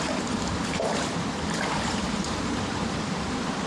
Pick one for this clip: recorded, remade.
remade